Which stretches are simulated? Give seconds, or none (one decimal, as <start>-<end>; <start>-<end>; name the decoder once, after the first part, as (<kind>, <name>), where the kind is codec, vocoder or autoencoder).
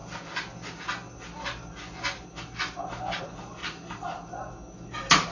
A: 3.6-4.5 (vocoder, BigVGAN v2)